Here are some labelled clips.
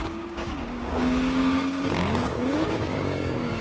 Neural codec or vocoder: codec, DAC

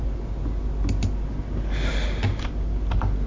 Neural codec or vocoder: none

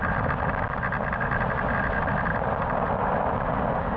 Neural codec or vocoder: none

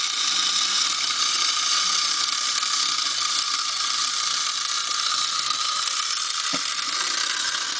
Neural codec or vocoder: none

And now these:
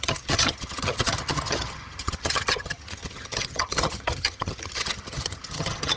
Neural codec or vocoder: vocoder, HiFi-GAN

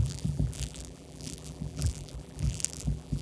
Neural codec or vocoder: vocoder, BigVGAN v2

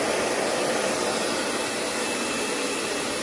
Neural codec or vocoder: none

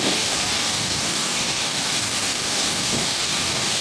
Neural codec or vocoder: codec, DAC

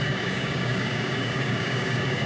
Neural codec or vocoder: codec, DAC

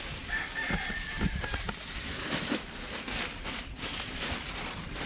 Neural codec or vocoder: none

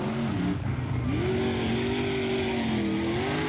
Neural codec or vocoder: none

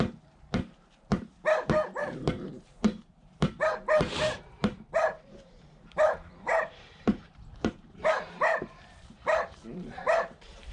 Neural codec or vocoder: vocoder, BigVGAN v2